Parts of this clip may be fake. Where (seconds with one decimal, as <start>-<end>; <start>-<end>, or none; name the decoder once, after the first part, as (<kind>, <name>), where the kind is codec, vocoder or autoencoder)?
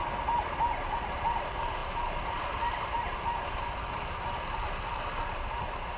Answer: none